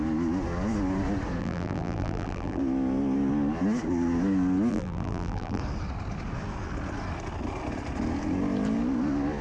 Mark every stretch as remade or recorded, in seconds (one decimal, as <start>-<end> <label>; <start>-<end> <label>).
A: 0.0-1.4 recorded; 1.4-2.6 remade; 2.6-4.7 recorded; 4.7-5.6 remade; 5.6-9.4 recorded